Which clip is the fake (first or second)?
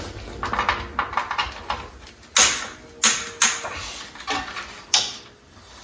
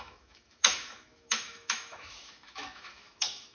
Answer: second